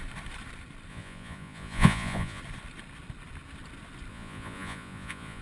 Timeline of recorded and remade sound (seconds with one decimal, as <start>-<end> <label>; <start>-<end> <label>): 0.0-0.9 recorded; 0.9-2.4 remade; 2.4-4.1 recorded; 4.1-5.4 remade

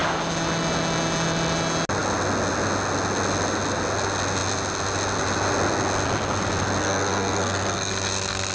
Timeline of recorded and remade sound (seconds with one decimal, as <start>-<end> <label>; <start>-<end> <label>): 0.0-6.8 recorded; 6.8-7.9 remade; 7.9-8.5 recorded

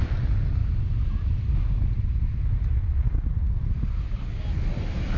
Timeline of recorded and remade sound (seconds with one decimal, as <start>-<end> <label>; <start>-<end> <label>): 0.0-5.2 recorded

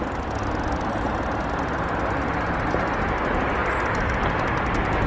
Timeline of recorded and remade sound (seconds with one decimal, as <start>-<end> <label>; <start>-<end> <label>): 0.0-5.1 recorded

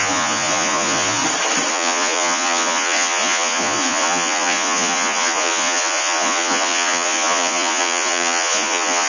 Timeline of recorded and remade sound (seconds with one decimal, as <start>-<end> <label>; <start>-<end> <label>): 0.0-1.2 remade; 1.2-1.7 recorded; 1.7-9.1 remade

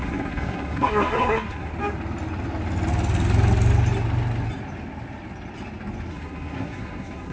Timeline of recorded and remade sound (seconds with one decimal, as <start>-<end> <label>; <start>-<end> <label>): 0.0-1.7 remade; 1.7-6.1 recorded; 6.1-7.3 remade

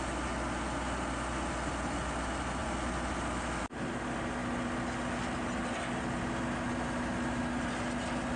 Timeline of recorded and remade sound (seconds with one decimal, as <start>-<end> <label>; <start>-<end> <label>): 0.0-8.4 recorded

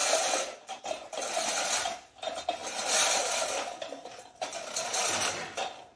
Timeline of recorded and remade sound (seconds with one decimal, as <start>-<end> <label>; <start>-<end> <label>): 0.0-6.0 recorded